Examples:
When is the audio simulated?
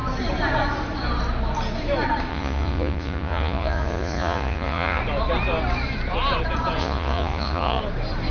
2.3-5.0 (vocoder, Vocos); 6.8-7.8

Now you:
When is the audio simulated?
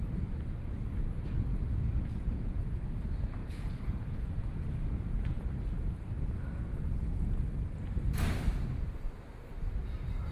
1.5-2.7 (vocoder, Vocos); 3.4-5.5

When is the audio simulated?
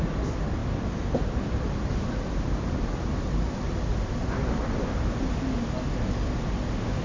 none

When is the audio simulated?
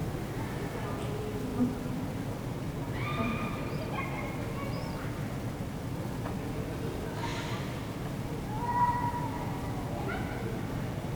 0.0-0.7 (vocoder, BigVGAN v2); 1.5-3.9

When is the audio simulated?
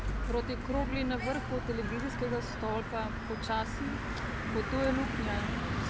none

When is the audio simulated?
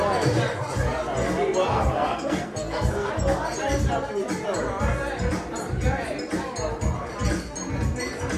1.7-3.1 (codec, SNAC)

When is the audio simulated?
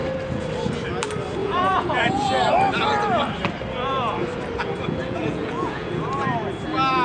1.4-2.5 (vocoder, Vocos); 5.0-6.0